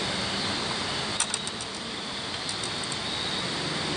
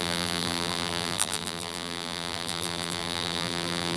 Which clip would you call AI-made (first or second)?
second